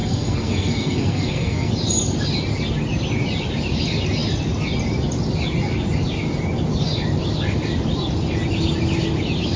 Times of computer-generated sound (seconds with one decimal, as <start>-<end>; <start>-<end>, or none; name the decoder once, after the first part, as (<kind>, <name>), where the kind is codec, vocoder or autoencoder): 0.0-1.7 (codec, SNAC)